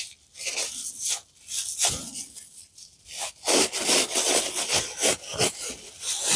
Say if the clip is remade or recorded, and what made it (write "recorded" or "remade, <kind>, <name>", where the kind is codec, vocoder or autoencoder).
recorded